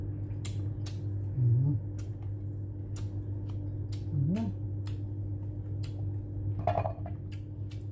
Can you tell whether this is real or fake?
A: real